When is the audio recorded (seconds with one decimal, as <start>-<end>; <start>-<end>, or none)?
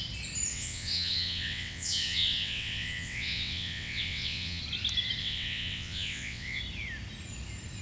0.0-0.5; 4.6-5.2; 6.6-7.8